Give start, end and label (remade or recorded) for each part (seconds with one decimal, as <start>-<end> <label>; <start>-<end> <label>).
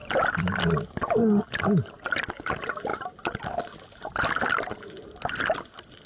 0.0-6.1 recorded